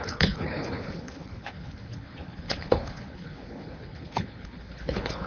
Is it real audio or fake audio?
fake